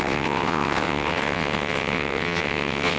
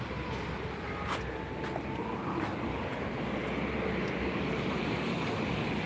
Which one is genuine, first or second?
second